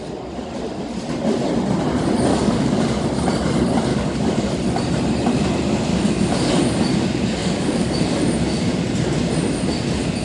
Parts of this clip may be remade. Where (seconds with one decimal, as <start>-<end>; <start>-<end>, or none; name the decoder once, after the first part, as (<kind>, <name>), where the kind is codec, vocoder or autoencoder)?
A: 2.3-3.0 (codec, DAC); 3.9-4.5; 5.9-6.5; 7.4-8.2